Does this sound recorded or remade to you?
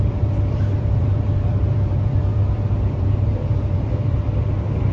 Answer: remade